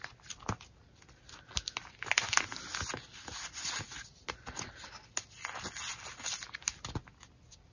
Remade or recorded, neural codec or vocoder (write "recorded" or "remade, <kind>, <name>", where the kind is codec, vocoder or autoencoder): recorded